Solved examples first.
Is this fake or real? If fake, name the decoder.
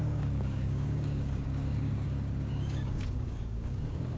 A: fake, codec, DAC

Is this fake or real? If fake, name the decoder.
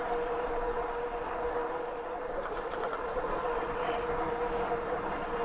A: real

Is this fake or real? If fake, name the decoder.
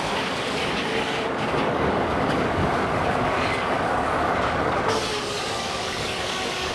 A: fake, codec, DAC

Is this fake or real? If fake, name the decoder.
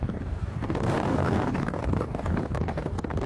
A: fake, codec, DAC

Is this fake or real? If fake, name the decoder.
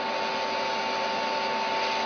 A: real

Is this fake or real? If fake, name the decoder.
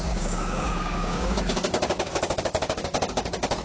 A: fake, codec, DAC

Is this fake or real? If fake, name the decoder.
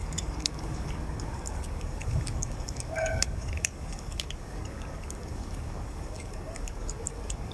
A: fake, codec, DAC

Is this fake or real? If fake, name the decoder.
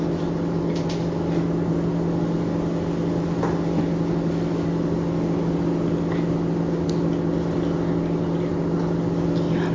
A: real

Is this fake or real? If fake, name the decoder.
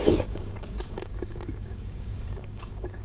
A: fake, codec, DAC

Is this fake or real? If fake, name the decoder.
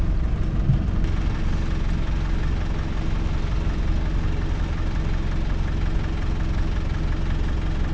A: real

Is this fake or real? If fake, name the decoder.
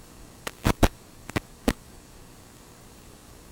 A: fake, codec, DAC